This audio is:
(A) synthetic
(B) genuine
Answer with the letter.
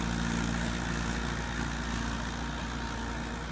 B